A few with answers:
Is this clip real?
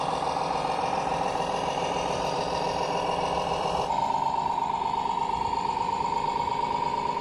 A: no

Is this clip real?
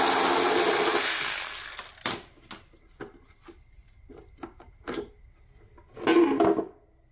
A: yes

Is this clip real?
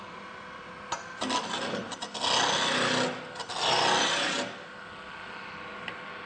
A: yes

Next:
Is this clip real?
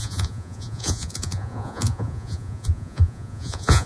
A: no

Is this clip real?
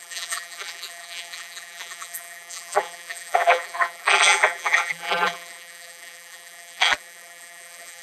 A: no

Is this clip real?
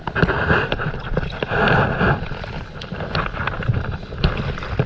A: no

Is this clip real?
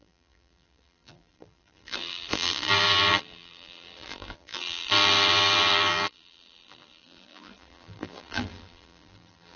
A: no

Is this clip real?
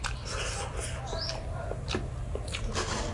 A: yes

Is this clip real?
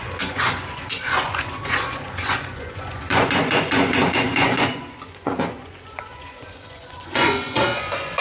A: no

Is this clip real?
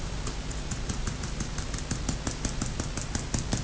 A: yes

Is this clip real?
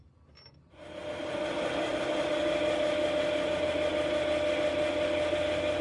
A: yes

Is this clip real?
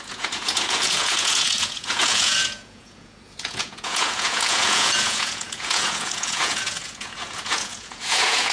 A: no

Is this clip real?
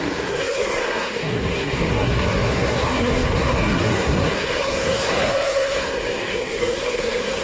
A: no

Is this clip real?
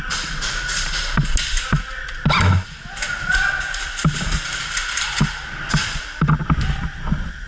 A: yes